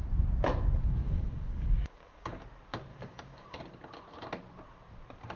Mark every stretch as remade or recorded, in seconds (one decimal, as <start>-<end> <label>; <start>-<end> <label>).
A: 0.0-1.0 recorded; 1.0-2.4 remade; 2.4-2.9 recorded; 2.9-3.6 remade; 3.6-5.4 recorded